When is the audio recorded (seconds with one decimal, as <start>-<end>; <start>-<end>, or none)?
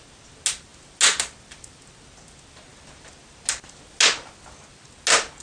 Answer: 0.0-5.4